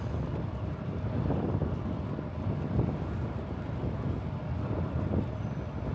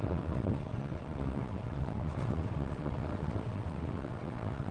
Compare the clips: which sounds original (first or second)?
first